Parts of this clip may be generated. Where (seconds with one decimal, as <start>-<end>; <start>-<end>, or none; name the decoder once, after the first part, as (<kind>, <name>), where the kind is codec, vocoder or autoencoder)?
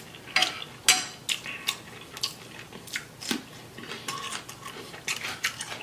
none